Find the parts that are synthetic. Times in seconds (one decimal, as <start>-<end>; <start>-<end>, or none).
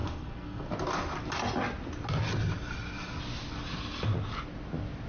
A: 0.0-0.7